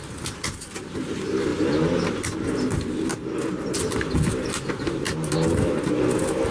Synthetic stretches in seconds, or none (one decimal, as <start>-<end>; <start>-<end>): none